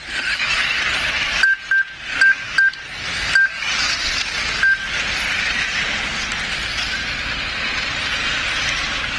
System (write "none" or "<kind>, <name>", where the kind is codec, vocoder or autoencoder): none